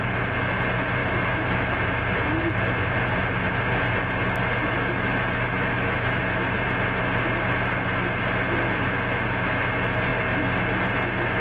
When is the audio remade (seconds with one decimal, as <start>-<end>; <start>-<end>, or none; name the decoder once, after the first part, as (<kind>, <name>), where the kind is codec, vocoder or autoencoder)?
1.0-1.8 (autoencoder, DAC-VAE); 4.6-6.2